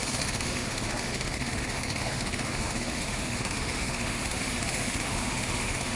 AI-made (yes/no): yes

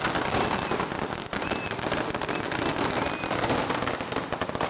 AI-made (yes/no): no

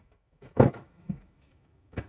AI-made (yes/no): yes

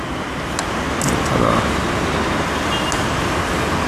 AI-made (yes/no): no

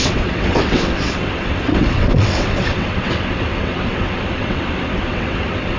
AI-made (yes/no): yes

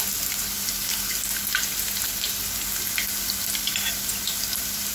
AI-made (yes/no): no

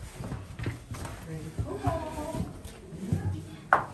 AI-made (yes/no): no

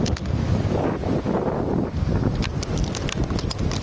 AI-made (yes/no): no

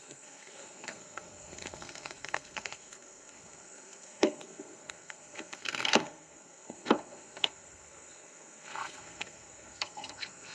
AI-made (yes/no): yes